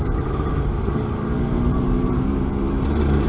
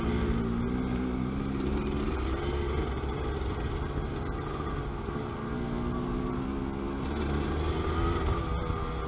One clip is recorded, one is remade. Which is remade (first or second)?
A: first